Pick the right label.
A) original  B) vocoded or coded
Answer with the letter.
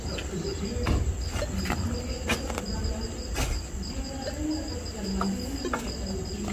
A